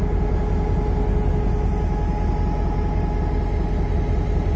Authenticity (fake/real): real